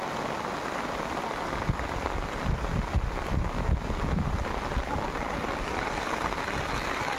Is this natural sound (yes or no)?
yes